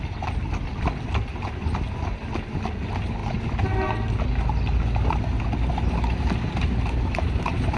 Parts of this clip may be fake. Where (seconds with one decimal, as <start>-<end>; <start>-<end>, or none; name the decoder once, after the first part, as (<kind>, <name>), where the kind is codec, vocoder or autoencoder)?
none